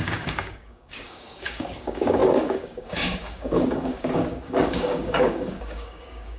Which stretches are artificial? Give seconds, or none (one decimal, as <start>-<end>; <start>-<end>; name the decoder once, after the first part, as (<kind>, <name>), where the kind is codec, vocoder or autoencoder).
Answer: 0.0-6.4 (codec, DAC)